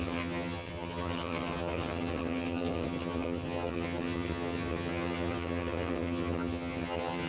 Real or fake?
fake